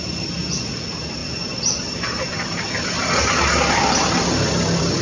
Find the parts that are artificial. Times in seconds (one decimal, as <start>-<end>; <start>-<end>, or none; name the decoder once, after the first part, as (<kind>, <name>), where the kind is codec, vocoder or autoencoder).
none